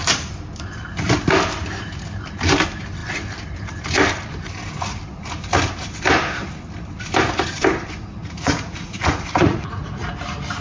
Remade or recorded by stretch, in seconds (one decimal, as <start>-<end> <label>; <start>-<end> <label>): 0.0-8.2 recorded; 8.2-10.1 remade; 10.1-10.6 recorded